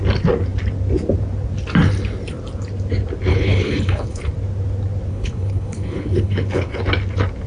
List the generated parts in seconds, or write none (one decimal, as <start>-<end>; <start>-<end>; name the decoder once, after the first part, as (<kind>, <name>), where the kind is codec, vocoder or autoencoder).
3.3-4.2 (codec, HILCodec); 5.1-6.8